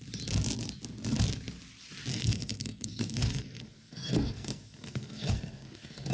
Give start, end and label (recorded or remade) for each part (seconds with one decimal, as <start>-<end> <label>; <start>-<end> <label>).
0.0-2.1 recorded; 2.1-6.1 remade